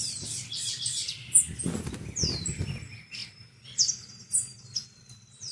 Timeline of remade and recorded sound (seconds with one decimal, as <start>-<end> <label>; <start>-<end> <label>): 0.0-1.6 remade; 1.6-3.2 recorded; 3.2-4.6 remade; 4.6-5.5 recorded